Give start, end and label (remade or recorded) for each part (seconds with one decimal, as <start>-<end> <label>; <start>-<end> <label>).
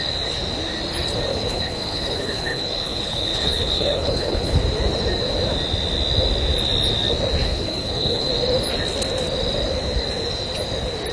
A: 0.0-1.3 recorded; 1.3-4.6 remade; 4.6-7.4 recorded; 7.4-8.3 remade; 8.3-11.1 recorded